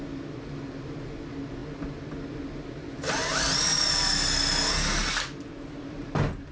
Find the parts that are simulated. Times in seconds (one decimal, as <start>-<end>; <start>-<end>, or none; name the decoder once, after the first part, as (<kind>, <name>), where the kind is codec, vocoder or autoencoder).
none